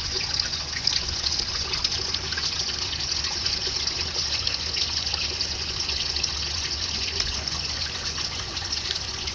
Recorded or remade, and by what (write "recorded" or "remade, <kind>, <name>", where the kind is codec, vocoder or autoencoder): remade, vocoder, Vocos